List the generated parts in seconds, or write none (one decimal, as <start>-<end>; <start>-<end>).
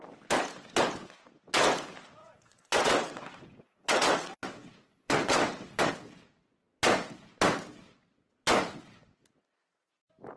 2.2-5.9